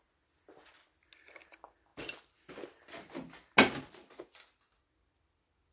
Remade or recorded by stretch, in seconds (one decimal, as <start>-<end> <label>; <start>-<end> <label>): 0.0-5.7 recorded